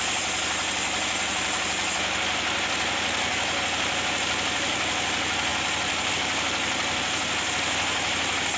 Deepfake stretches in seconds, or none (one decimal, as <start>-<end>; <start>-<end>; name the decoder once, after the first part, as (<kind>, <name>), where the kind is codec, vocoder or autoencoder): none

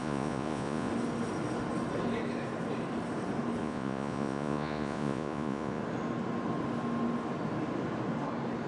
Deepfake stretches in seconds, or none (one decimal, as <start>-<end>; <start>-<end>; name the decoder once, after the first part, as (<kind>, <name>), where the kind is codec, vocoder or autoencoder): 0.0-0.9 (vocoder, Vocos); 3.6-5.8

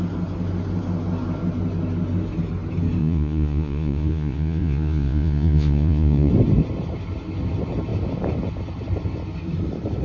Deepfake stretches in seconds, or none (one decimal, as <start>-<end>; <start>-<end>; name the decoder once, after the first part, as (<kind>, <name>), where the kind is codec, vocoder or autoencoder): 3.0-6.3 (vocoder, Vocos)

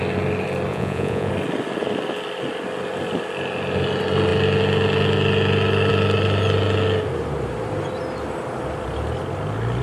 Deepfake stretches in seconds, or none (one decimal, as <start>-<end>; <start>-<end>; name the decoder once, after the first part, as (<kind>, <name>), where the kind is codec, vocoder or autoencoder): 0.7-1.3 (vocoder, Vocos)

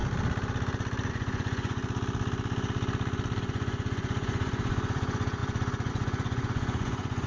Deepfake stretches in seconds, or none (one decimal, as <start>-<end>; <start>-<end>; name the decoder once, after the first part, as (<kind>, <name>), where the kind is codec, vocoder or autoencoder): 1.1-1.8 (vocoder, Vocos); 3.4-7.3

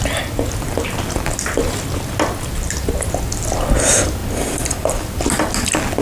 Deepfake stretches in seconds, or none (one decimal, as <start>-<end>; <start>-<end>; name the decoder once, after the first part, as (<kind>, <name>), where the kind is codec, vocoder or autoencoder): none

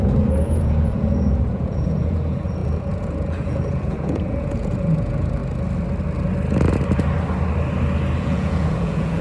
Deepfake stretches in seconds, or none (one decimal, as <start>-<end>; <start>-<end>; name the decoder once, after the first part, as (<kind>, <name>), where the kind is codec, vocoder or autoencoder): 0.0-5.4 (vocoder, Vocos); 8.2-9.2